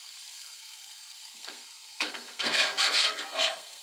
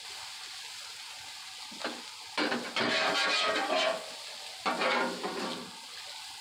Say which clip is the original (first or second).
second